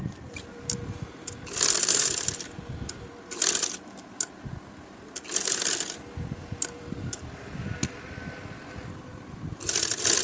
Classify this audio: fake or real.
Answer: real